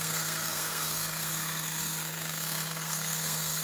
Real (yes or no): no